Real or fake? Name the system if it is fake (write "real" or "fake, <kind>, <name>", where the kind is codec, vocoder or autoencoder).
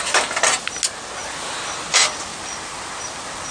real